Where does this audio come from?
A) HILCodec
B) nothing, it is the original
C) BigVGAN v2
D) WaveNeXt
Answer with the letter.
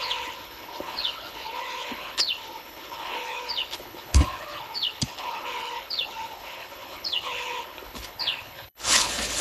A